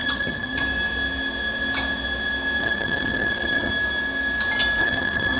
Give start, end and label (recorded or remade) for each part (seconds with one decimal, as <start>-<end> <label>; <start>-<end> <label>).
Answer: 0.0-0.6 remade; 0.6-2.6 recorded; 2.6-3.7 remade; 3.7-4.8 recorded; 4.8-5.4 remade